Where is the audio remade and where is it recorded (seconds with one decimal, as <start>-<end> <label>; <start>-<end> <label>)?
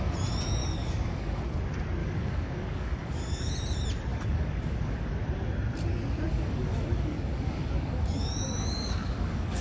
0.0-0.6 recorded; 0.6-1.4 remade; 1.4-2.0 recorded; 2.0-3.5 remade; 3.5-4.1 recorded; 4.1-5.1 remade; 5.1-6.3 recorded; 6.3-9.6 remade